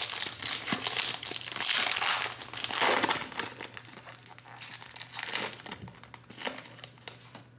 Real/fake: real